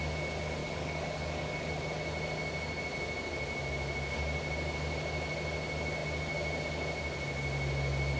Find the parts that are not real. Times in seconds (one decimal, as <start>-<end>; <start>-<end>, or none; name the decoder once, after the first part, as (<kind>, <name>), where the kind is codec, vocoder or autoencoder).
0.6-1.7 (codec, DAC)

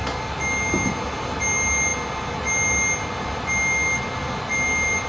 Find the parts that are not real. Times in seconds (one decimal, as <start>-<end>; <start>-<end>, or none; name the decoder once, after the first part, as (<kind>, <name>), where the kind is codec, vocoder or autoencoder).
none

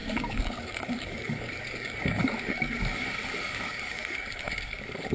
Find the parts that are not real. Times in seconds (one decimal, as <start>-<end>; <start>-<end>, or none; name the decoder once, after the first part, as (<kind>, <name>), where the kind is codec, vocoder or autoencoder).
0.0-5.1 (codec, DAC)

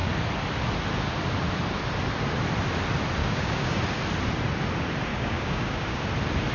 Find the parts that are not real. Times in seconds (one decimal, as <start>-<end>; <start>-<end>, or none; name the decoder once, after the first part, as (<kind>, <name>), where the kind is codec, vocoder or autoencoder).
3.2-3.7 (codec, DAC); 5.1-6.0

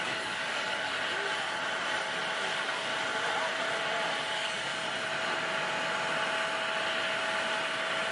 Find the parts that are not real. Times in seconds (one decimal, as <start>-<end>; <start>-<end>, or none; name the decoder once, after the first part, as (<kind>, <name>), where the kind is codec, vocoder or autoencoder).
0.0-0.9 (codec, DAC); 2.5-2.9; 4.3-4.7

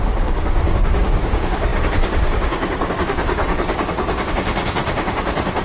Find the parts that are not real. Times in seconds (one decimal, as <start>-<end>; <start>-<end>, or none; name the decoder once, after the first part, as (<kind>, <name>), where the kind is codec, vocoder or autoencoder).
0.0-3.4 (codec, DAC); 4.3-4.8